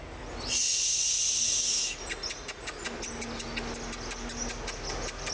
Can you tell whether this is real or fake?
real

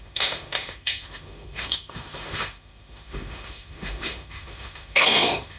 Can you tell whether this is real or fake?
fake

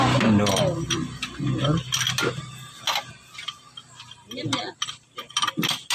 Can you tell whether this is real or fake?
real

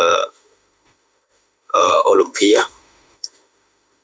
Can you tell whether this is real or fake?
fake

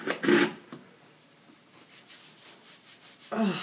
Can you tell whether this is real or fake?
real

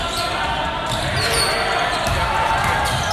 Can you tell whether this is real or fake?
real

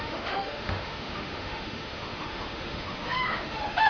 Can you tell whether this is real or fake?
fake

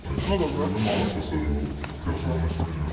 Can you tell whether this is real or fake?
fake